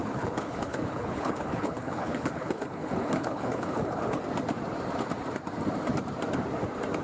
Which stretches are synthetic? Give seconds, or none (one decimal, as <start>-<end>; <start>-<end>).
0.0-4.2